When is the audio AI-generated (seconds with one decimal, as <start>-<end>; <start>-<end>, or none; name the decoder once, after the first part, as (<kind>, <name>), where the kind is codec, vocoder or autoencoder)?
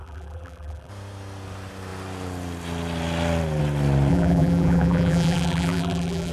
0.0-0.9 (vocoder, BigVGAN v2); 4.1-6.3